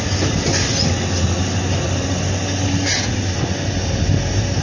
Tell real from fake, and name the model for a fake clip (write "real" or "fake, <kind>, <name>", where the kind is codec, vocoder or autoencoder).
real